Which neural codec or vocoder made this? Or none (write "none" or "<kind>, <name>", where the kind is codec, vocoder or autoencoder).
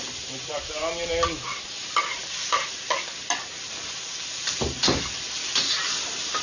none